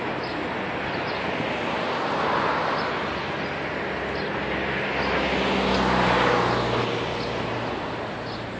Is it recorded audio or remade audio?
recorded